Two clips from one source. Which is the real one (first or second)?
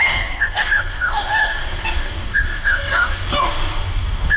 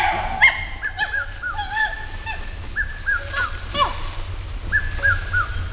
second